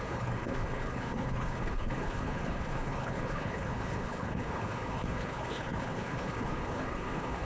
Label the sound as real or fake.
fake